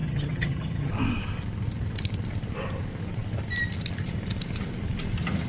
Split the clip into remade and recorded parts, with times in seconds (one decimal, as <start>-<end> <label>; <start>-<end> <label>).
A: 0.0-0.9 remade; 0.9-5.5 recorded